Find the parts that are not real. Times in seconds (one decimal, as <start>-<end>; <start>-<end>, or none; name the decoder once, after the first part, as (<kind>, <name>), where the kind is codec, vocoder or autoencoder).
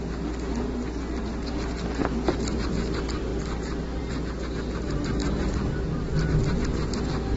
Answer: none